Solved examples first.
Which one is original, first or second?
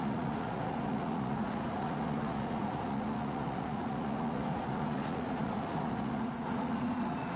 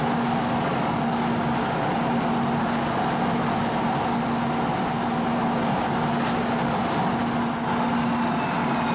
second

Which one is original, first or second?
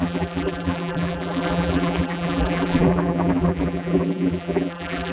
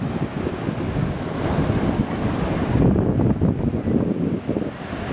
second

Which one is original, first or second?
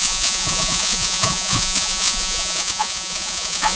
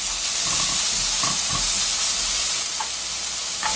second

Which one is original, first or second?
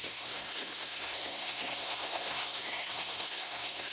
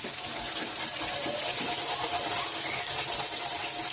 second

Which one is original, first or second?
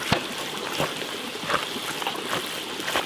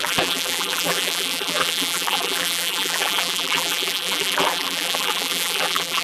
first